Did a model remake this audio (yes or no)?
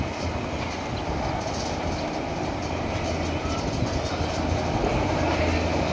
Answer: no